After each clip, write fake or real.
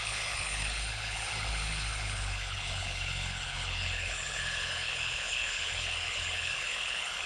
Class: fake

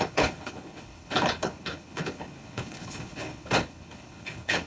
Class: fake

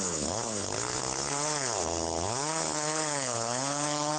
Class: fake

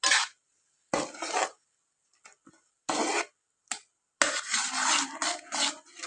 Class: real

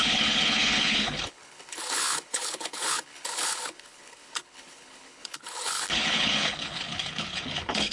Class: fake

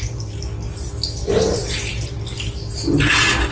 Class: real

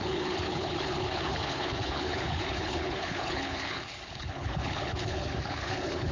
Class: fake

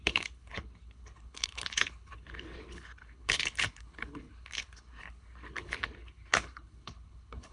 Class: fake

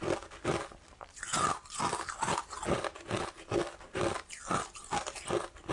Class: real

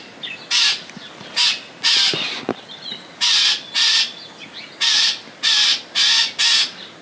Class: real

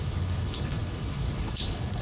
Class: fake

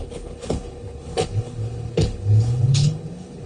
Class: fake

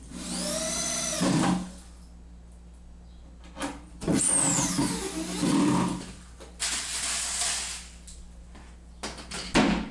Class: real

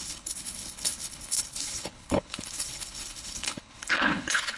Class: fake